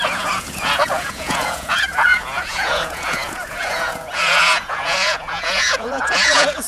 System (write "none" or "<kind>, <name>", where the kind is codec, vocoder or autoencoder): vocoder, Vocos